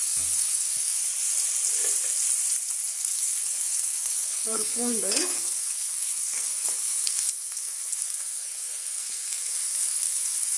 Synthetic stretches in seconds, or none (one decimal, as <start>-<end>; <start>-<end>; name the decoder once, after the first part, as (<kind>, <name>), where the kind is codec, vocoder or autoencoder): 0.0-1.0 (codec, SNAC); 2.9-10.6